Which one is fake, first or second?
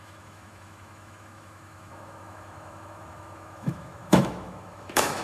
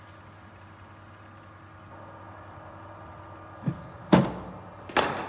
first